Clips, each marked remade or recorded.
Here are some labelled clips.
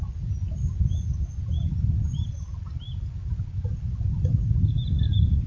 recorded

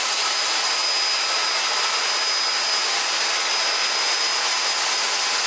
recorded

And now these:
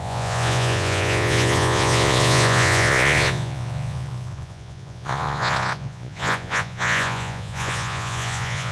remade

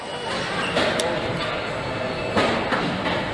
recorded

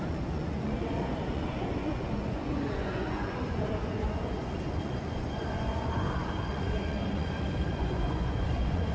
remade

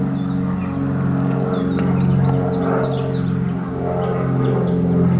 recorded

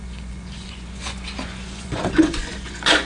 remade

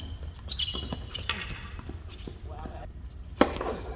recorded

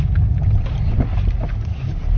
recorded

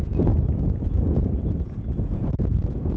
remade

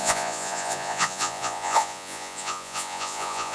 remade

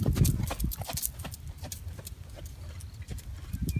recorded